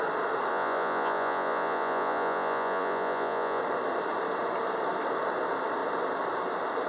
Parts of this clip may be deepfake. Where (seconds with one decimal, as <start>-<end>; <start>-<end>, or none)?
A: 0.5-3.6